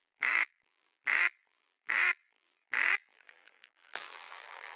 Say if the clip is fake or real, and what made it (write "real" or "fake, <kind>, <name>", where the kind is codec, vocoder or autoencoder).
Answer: fake, vocoder, BigVGAN v2